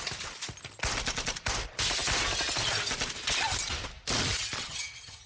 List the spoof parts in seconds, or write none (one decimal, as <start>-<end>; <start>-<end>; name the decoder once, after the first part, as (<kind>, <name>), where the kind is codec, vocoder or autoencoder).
4.6-5.3 (vocoder, HiFi-GAN)